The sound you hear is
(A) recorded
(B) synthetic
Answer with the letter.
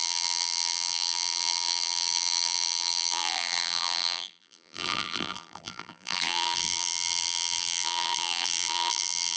B